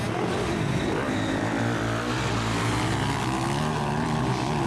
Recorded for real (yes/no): yes